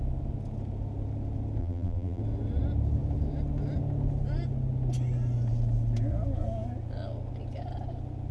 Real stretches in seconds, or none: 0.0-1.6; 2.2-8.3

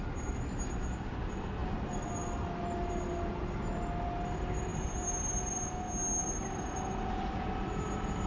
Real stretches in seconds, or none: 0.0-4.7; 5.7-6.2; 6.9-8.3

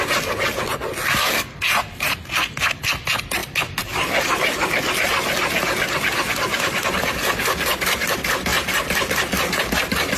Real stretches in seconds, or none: 0.0-3.4; 4.9-10.2